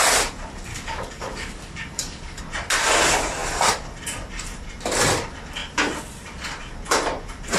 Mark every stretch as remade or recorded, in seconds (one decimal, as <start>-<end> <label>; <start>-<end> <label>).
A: 0.0-0.7 recorded; 0.7-2.4 remade; 2.4-7.6 recorded